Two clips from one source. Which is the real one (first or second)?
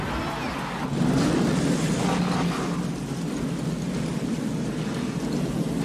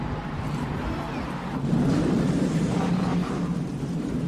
first